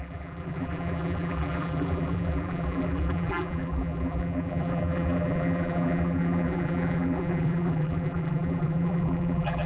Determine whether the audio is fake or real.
fake